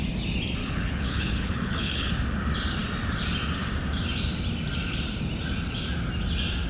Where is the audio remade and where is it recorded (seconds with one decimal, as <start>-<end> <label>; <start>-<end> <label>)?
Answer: 0.0-0.6 recorded; 0.6-2.1 remade; 2.1-6.7 recorded